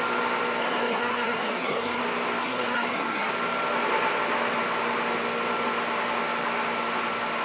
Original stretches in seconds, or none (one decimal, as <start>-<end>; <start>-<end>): 0.0-0.6; 2.0-2.4; 3.3-7.4